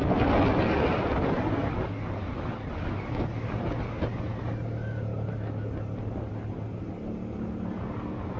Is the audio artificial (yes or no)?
no